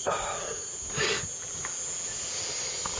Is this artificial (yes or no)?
no